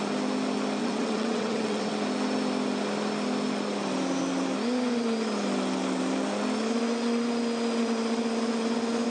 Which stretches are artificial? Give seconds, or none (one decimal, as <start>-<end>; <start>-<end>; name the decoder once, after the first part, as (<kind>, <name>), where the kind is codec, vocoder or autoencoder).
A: 0.8-1.9 (vocoder, WaveNeXt)

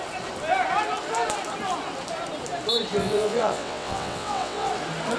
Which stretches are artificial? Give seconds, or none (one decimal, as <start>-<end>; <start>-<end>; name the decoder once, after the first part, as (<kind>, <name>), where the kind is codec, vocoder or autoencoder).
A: 3.0-4.7 (vocoder, WaveNeXt)

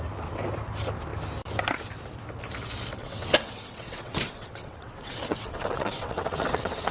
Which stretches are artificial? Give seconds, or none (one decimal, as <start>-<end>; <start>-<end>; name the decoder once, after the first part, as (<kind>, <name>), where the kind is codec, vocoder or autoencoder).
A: 3.0-6.9 (vocoder, WaveNeXt)

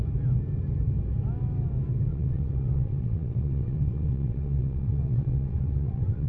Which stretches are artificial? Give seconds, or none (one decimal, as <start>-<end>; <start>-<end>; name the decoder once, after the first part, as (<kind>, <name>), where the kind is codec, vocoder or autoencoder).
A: 2.1-6.3 (vocoder, WaveNeXt)

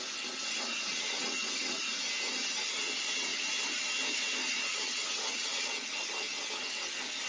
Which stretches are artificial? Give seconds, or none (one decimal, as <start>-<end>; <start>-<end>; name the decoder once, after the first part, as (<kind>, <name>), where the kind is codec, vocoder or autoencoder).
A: 0.9-1.8 (vocoder, WaveNeXt); 4.7-5.7